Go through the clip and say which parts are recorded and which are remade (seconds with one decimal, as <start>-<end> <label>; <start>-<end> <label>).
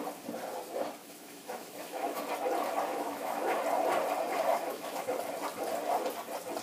0.0-1.0 recorded; 1.0-2.2 remade; 2.2-2.9 recorded; 2.9-3.6 remade; 3.6-4.5 recorded; 4.5-5.1 remade; 5.1-6.6 recorded